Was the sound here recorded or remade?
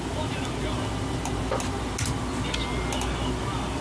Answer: recorded